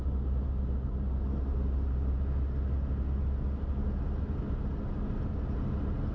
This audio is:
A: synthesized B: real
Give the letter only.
B